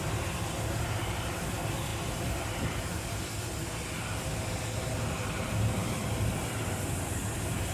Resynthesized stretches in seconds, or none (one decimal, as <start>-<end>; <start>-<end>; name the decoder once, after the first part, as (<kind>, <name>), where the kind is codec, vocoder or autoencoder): none